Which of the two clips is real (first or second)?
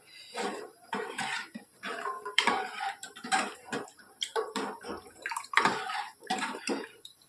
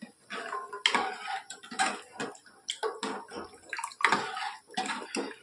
second